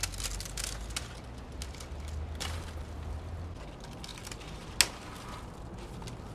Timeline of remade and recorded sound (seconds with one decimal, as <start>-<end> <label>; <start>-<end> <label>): 0.0-4.1 recorded; 4.1-4.7 remade; 4.7-6.3 recorded